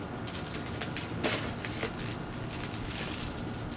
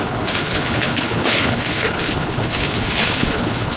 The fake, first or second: second